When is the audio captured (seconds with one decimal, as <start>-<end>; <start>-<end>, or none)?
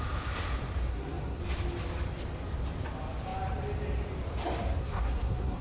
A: 0.0-0.9; 1.4-4.8